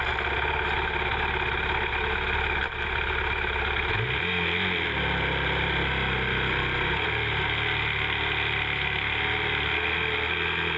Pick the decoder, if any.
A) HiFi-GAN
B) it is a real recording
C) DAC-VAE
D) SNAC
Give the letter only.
B